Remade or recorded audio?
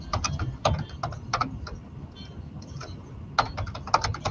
recorded